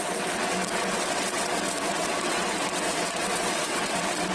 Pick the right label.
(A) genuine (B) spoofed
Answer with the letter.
B